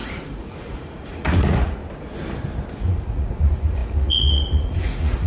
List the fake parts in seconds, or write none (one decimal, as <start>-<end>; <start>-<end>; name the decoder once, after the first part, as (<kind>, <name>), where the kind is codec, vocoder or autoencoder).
0.0-1.8 (vocoder, Vocos); 2.7-5.3